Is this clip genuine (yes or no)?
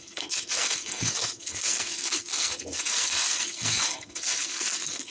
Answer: no